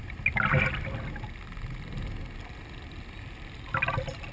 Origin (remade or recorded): recorded